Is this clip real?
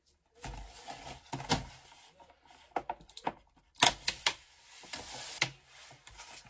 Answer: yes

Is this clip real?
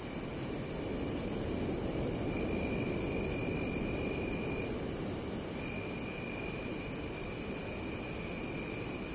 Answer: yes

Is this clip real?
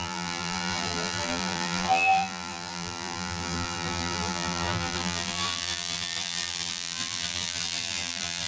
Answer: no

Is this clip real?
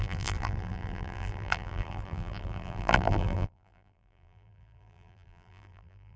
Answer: no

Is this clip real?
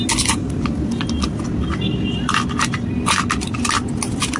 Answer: yes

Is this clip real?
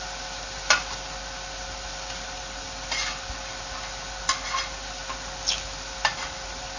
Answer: yes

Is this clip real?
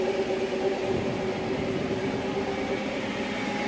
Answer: yes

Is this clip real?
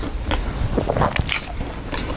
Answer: yes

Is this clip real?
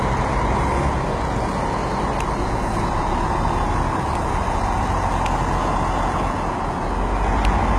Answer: yes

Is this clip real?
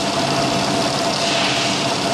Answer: yes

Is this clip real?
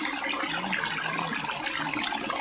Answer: yes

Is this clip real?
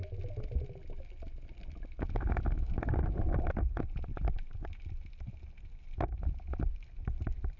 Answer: yes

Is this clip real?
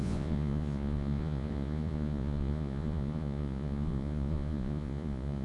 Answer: no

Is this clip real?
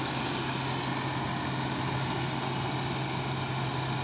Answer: yes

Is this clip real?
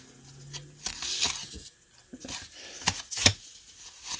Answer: yes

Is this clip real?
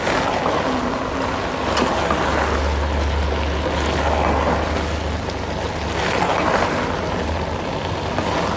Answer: yes